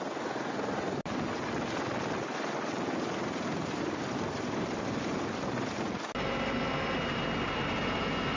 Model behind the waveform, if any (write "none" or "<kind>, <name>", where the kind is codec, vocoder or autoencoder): none